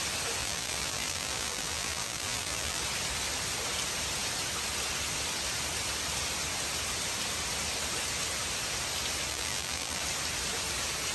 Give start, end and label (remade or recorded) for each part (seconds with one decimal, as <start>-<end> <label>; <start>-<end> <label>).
0.0-0.4 recorded; 0.4-2.8 remade; 2.8-9.3 recorded; 9.3-10.0 remade; 10.0-11.1 recorded